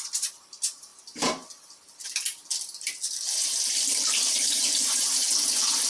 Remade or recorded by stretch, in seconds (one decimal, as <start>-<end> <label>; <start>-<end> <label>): 0.0-0.9 remade; 0.9-4.0 recorded; 4.0-5.2 remade; 5.2-5.9 recorded